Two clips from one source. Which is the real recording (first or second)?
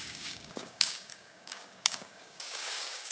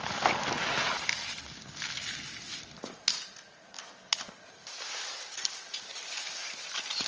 second